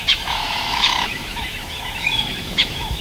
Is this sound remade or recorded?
remade